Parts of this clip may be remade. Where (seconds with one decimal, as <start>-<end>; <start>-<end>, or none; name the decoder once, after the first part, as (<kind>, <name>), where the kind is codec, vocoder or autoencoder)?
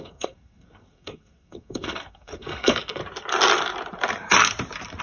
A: 0.0-3.0 (codec, SNAC)